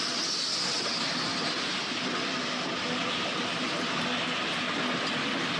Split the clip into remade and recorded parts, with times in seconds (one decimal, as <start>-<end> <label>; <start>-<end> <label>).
0.0-1.3 recorded; 1.3-3.9 remade; 3.9-5.6 recorded